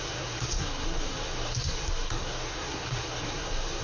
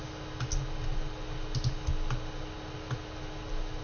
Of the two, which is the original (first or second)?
second